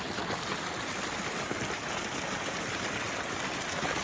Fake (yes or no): no